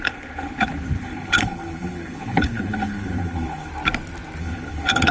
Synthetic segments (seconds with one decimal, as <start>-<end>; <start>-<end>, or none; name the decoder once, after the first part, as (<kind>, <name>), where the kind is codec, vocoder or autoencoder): 0.0-3.7 (codec, HILCodec); 4.4-5.1